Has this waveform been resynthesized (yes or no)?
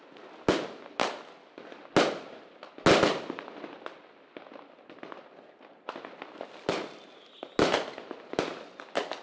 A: no